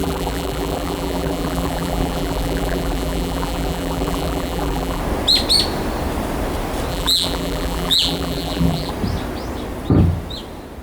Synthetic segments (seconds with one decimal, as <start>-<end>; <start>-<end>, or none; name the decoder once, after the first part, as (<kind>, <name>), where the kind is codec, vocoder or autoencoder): 0.0-5.0 (vocoder, BigVGAN v2); 6.9-8.9